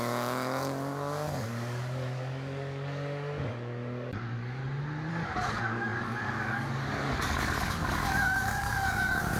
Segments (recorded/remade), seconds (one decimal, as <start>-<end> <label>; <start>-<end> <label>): 0.0-4.6 remade; 4.6-5.1 recorded; 5.1-9.4 remade